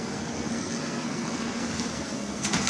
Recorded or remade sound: remade